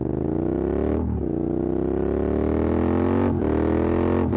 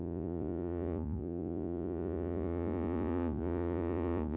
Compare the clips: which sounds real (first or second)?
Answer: first